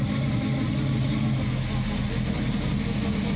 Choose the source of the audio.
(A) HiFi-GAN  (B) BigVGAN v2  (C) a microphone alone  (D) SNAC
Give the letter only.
C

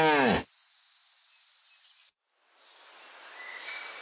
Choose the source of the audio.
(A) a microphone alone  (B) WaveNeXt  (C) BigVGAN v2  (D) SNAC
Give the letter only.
A